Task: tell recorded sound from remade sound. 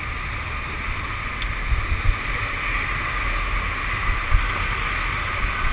recorded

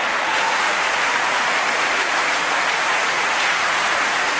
remade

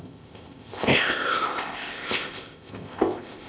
remade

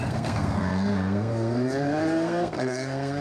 remade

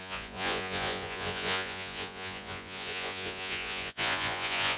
remade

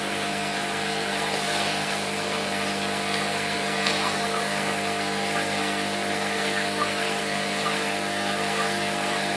remade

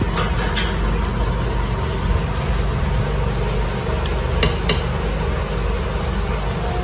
recorded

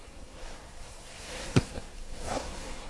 remade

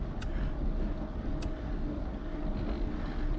recorded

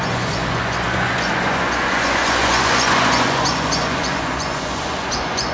remade